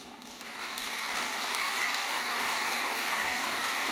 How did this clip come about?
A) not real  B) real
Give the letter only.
A